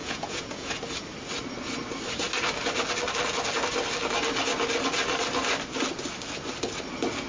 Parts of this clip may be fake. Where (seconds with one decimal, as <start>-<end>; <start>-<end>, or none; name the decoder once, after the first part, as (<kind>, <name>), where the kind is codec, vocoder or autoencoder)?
0.0-0.8 (vocoder, Vocos)